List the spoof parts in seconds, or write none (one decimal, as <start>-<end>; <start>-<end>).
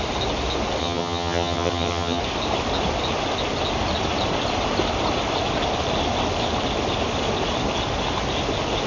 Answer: 0.8-2.2